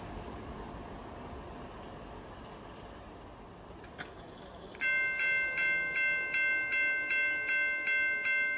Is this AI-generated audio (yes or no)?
no